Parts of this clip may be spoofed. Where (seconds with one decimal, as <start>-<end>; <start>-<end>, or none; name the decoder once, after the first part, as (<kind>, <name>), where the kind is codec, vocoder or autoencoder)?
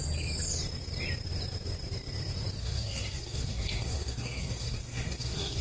2.6-5.6 (codec, SNAC)